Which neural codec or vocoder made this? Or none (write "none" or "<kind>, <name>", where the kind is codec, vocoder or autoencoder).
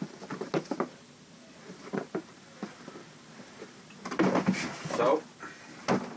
vocoder, BigVGAN v2